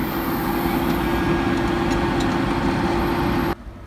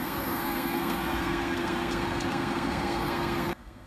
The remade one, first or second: second